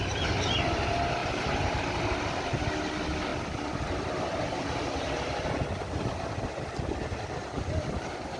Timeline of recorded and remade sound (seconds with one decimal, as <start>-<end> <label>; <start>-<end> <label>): 0.0-1.2 recorded; 1.2-2.4 remade; 2.4-8.4 recorded